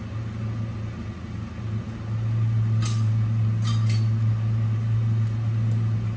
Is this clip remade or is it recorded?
recorded